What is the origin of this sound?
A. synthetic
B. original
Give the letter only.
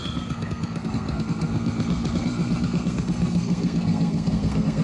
A